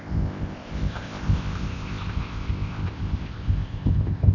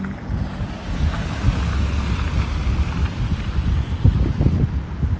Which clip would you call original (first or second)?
second